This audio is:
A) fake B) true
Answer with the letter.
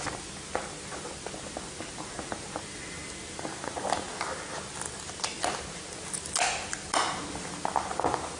B